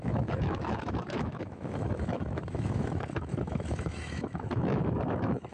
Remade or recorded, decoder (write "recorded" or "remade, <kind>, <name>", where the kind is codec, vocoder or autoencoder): remade, autoencoder, DAC-VAE